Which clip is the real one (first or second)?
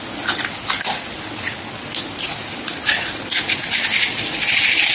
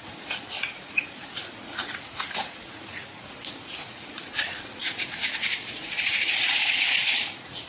first